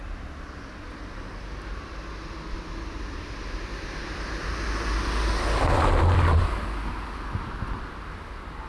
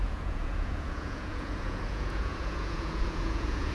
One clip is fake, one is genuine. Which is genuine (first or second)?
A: first